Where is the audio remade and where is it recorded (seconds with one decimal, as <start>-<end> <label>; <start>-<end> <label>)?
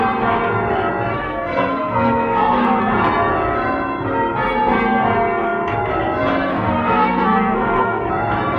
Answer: 0.0-1.1 recorded; 1.1-2.8 remade; 2.8-6.5 recorded; 6.5-8.1 remade; 8.1-8.6 recorded